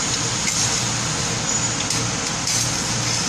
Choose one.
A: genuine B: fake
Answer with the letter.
A